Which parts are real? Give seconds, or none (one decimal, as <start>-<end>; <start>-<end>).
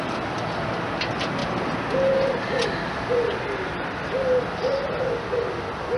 0.0-6.0